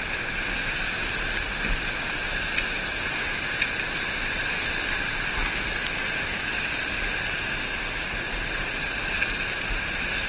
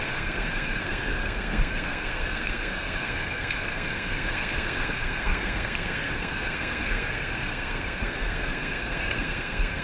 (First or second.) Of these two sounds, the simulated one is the second